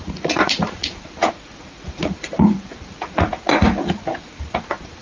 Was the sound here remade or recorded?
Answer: remade